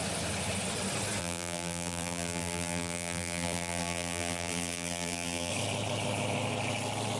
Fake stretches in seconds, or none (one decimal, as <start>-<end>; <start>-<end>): 1.2-5.5